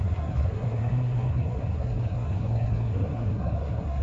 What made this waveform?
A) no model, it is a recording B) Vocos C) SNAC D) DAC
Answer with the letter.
C